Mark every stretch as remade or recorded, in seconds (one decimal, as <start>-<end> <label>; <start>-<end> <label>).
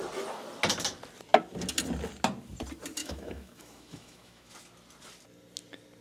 0.0-3.0 recorded; 3.0-4.5 remade; 4.5-6.0 recorded